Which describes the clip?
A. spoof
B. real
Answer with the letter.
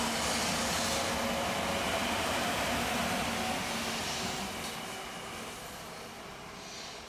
B